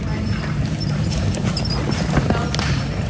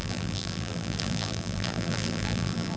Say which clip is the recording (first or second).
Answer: first